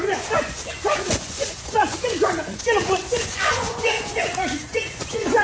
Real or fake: fake